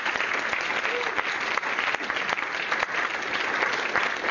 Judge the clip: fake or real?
real